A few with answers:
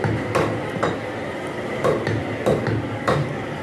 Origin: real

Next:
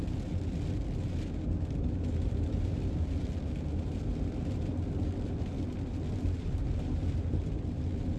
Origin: real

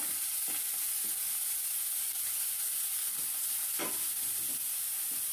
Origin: real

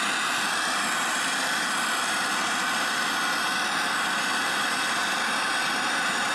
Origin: real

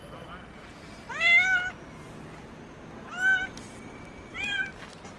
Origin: real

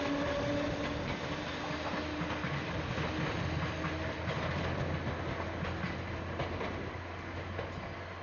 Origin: real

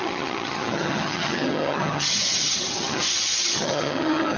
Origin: fake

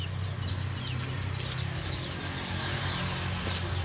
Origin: real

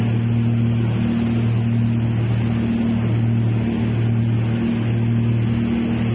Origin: real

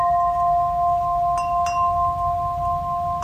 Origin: real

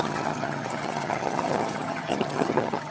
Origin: fake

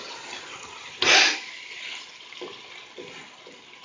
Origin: real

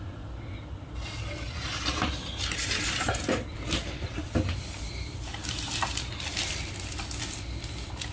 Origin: real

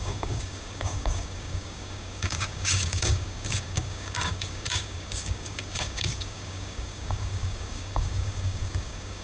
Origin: fake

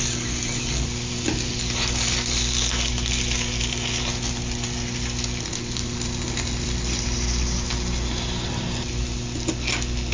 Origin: real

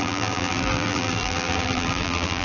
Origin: fake